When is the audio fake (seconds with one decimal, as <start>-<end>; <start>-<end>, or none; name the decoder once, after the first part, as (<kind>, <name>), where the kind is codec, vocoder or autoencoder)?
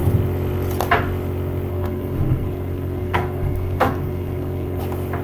1.7-4.8 (codec, SNAC)